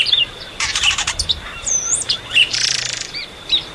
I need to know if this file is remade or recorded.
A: remade